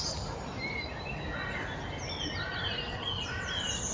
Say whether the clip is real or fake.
real